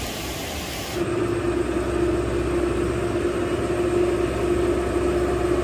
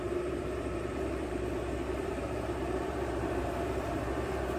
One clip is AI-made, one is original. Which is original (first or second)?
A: first